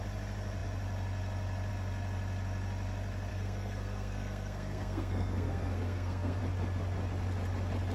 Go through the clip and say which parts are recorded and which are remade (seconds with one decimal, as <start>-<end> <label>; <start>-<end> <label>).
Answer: 0.0-3.3 recorded; 3.3-6.4 remade; 6.4-7.9 recorded